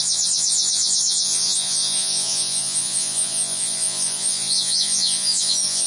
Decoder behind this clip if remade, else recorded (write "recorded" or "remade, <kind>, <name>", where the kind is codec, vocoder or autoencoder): remade, vocoder, Vocos